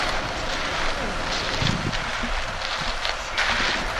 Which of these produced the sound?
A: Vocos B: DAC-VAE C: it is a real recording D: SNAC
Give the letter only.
C